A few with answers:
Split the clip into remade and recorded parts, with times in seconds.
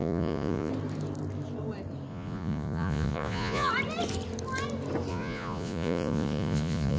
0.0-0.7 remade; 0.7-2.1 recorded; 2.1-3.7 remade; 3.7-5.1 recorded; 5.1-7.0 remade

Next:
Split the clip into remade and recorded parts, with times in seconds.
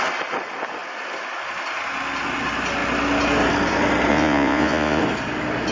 0.0-4.1 recorded; 4.1-5.0 remade; 5.0-5.7 recorded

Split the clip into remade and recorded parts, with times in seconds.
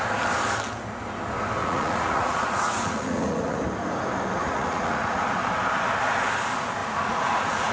0.0-1.6 recorded; 1.6-3.6 remade; 3.6-4.4 recorded; 4.4-5.2 remade; 5.2-6.8 recorded; 6.8-7.7 remade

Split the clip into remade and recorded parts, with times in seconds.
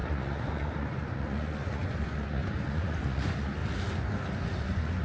0.0-3.6 remade; 3.6-4.5 recorded; 4.5-5.0 remade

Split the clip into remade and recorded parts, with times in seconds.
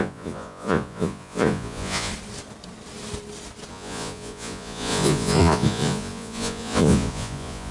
0.0-2.1 remade; 2.1-3.7 recorded; 3.7-7.7 remade